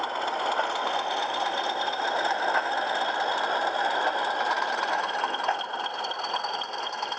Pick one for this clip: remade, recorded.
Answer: recorded